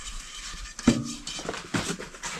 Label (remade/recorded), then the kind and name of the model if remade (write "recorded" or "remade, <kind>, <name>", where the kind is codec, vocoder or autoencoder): recorded